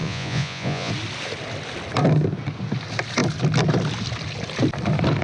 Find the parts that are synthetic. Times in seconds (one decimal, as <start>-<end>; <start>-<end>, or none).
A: 0.0-0.9